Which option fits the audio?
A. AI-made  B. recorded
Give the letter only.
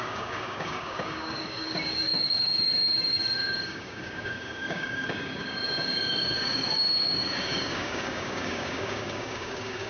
A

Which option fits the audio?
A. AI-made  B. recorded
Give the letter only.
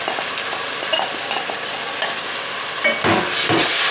B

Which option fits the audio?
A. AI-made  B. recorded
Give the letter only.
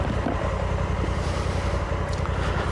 B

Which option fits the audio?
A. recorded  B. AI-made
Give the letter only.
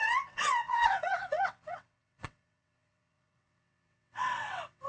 B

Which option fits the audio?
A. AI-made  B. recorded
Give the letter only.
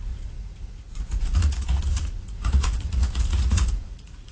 A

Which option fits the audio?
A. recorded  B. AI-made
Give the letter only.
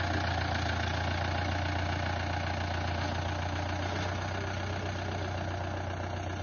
A